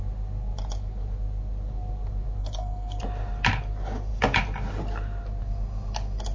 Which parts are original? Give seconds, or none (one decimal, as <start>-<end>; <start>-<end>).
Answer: 0.0-2.4; 3.0-6.3